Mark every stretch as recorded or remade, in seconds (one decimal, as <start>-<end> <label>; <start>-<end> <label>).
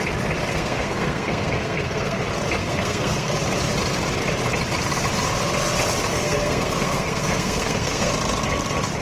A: 0.0-0.5 recorded; 0.5-2.2 remade; 2.2-2.6 recorded; 2.6-3.3 remade; 3.3-6.1 recorded; 6.1-8.1 remade; 8.1-9.0 recorded